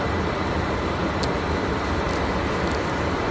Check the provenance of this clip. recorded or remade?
recorded